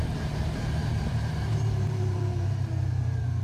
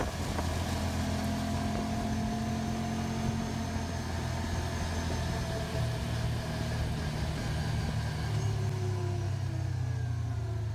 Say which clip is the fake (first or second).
first